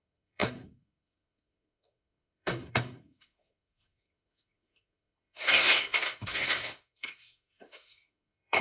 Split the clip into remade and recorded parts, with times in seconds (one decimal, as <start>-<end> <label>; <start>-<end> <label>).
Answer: 0.0-8.6 remade